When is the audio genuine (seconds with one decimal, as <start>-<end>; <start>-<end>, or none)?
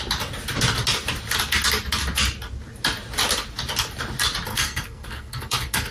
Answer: 0.0-4.5